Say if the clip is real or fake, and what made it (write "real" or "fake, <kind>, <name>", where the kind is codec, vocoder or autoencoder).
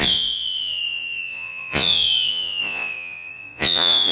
fake, vocoder, Vocos